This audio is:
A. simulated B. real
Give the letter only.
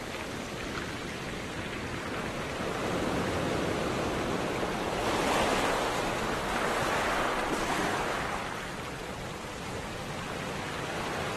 A